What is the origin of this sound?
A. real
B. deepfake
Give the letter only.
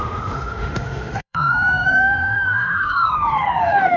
B